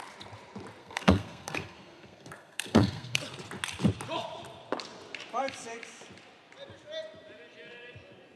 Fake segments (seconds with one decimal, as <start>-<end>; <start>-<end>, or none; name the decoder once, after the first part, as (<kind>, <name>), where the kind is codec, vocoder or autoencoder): 0.8-3.2 (codec, SNAC)